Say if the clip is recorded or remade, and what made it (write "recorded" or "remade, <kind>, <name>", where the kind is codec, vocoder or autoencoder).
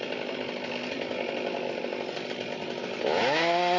recorded